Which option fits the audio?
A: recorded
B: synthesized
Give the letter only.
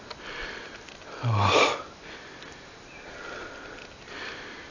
A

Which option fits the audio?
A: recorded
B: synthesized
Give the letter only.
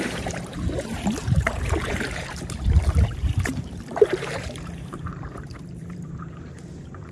B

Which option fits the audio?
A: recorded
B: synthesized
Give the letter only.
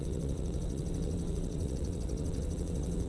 B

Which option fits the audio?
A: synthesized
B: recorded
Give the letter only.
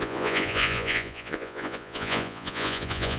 A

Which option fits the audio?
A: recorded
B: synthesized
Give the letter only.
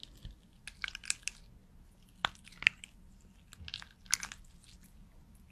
A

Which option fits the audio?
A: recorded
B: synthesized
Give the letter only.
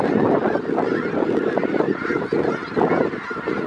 A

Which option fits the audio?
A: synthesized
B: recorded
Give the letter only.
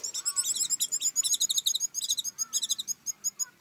B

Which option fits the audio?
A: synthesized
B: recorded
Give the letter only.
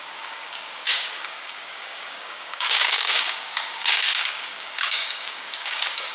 A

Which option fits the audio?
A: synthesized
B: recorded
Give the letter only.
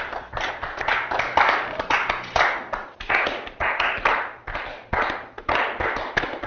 B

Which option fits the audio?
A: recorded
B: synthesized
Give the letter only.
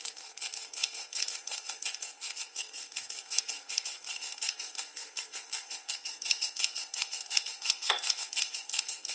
B